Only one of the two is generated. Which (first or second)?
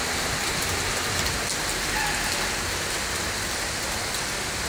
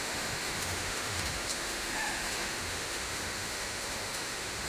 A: second